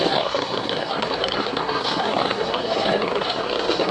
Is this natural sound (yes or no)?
no